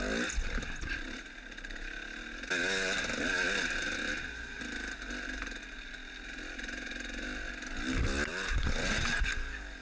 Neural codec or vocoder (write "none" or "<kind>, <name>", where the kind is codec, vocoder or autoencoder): none